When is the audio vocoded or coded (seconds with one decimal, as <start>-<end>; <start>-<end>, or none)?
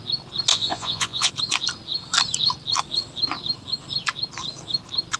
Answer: 0.5-1.3